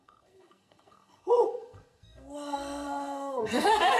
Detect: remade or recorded remade